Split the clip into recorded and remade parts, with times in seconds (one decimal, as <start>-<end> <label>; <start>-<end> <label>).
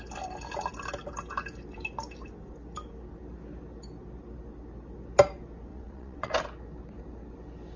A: 0.0-5.7 recorded; 5.7-6.3 remade; 6.3-7.8 recorded